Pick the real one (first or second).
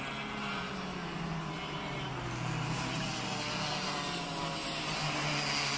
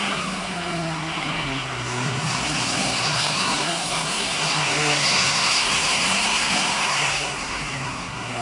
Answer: first